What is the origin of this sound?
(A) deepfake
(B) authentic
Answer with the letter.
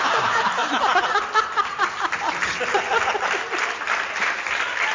B